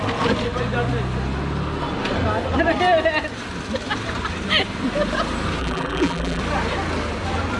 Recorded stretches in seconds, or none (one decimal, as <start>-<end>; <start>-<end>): 0.0-5.6; 6.4-7.6